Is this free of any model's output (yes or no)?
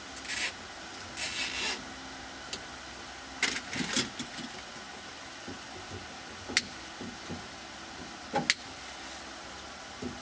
yes